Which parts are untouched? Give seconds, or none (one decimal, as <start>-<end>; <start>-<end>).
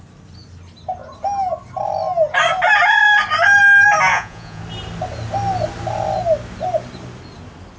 0.0-4.1; 4.6-7.8